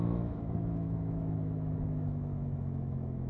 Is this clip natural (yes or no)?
no